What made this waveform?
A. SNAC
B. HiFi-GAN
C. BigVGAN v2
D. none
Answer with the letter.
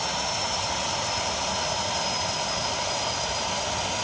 C